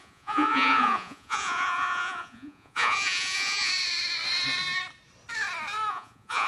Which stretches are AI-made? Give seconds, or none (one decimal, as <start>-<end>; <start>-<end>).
0.0-3.7; 5.9-6.5

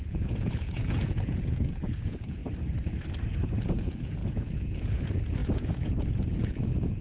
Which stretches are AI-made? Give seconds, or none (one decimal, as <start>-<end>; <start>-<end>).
0.0-2.4; 3.6-7.0

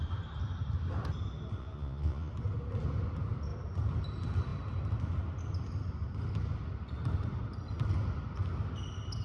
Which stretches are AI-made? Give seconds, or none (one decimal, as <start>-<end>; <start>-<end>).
1.6-2.3

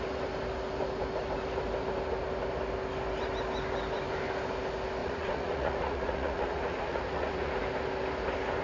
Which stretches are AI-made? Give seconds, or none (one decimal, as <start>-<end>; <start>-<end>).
5.0-7.5

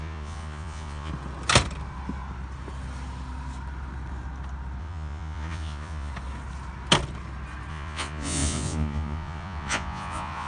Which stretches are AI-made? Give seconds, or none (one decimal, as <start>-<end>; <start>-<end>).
0.0-1.1; 4.8-6.1; 7.7-10.5

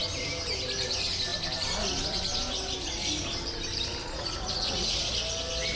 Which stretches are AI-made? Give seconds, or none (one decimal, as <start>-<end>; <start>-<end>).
4.0-5.1